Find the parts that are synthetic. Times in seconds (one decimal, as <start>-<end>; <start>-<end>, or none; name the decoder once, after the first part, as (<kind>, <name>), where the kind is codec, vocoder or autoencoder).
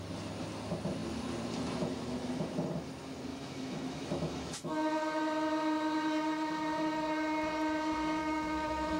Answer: 3.3-5.2 (autoencoder, DAC-VAE); 8.2-9.0